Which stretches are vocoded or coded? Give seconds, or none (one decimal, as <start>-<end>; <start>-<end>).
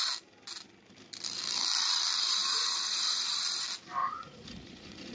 2.4-3.3; 4.0-5.1